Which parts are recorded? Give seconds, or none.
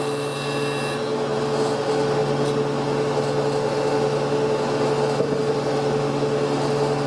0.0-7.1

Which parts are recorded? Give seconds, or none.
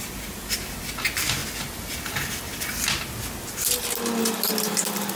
0.0-5.2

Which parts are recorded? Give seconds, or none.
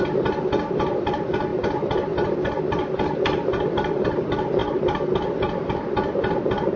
0.0-6.8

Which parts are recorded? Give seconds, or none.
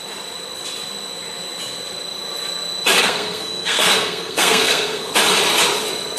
0.0-3.0; 5.1-6.2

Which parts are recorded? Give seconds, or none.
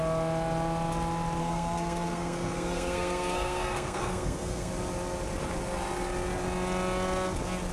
0.0-1.4; 4.7-7.7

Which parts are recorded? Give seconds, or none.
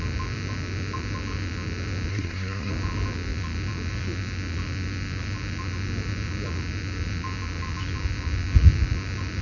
0.0-2.1; 2.7-9.4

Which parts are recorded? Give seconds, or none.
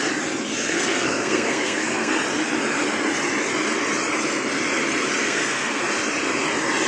0.0-0.5; 2.1-5.2; 5.8-6.9